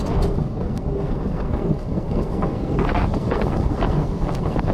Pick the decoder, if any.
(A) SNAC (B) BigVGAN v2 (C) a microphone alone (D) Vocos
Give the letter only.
A